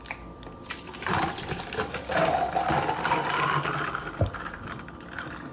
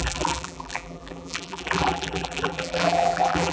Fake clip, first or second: second